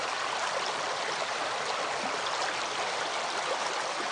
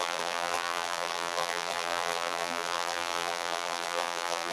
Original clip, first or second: first